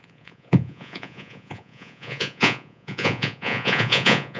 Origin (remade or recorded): remade